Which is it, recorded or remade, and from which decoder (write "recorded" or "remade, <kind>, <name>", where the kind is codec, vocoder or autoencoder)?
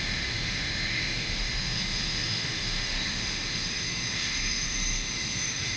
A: remade, autoencoder, DAC-VAE